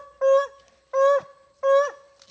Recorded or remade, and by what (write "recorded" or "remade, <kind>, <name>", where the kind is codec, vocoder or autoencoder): recorded